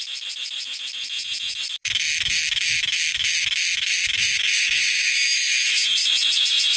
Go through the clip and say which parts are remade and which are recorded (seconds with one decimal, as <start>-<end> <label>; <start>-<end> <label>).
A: 0.0-1.0 remade; 1.0-1.6 recorded; 1.6-6.8 remade